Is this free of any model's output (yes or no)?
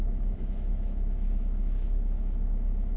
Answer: no